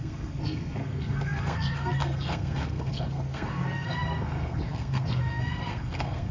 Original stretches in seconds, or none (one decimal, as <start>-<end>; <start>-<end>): none